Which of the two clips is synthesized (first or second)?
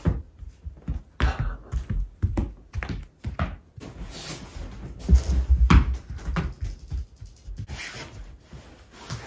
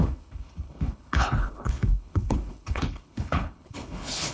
second